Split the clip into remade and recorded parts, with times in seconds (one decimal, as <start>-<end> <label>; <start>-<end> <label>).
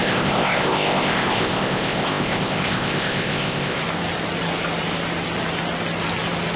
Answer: 0.0-3.8 remade; 3.8-6.6 recorded